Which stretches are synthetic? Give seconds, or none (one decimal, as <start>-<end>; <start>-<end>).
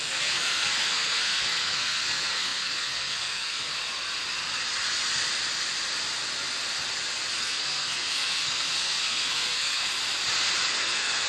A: 0.0-3.7; 7.4-10.0; 10.7-11.3